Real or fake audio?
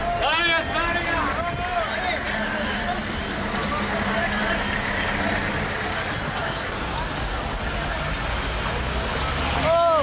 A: real